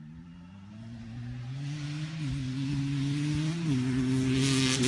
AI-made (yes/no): no